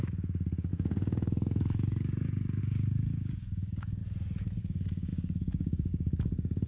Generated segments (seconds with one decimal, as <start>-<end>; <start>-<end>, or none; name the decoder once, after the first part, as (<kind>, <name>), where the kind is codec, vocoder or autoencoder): 0.0-4.0 (codec, DAC); 4.6-6.7